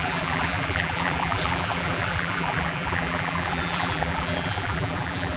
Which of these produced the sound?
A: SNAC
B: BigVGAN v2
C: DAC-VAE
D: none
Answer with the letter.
B